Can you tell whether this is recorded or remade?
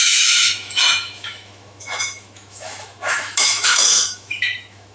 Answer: remade